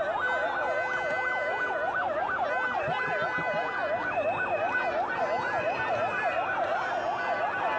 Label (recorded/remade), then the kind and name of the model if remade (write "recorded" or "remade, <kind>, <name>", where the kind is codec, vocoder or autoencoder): recorded